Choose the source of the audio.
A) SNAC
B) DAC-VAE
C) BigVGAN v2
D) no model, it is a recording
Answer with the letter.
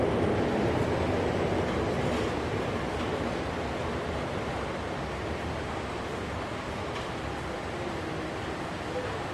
D